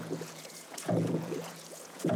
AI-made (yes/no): yes